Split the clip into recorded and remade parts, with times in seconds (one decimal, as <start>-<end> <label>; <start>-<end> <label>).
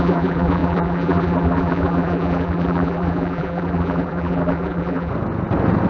0.0-5.1 remade; 5.1-5.9 recorded